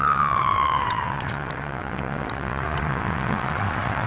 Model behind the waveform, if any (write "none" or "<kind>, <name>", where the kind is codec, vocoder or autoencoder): vocoder, WaveNeXt